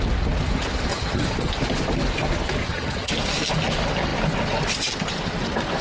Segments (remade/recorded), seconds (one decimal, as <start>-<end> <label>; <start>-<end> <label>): 0.0-0.9 recorded; 0.9-1.5 remade; 1.5-2.6 recorded; 2.6-3.1 remade; 3.1-5.8 recorded